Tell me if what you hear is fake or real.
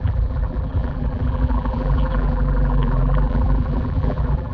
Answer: fake